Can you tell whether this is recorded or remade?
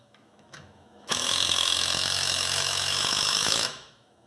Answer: remade